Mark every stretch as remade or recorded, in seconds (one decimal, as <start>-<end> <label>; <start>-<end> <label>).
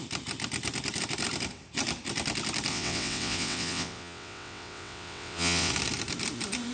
0.0-2.7 recorded; 2.7-5.7 remade; 5.7-6.7 recorded